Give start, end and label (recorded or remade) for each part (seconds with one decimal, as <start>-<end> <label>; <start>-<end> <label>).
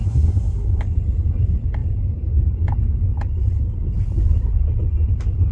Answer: 0.0-0.8 remade; 0.8-5.5 recorded